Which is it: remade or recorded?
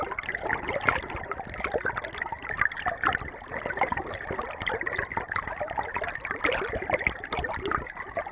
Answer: recorded